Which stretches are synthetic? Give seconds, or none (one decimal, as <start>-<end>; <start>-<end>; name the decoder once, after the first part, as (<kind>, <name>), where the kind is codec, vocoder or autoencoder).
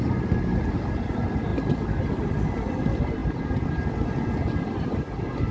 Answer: none